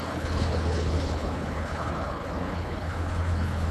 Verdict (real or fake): fake